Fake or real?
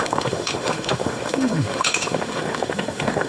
fake